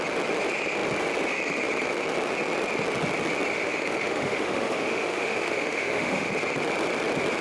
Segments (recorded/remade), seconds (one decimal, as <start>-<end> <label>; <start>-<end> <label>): 0.0-3.5 recorded; 3.5-6.3 remade; 6.3-7.4 recorded